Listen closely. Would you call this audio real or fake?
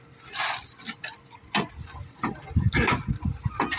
real